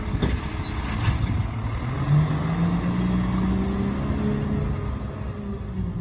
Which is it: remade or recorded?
recorded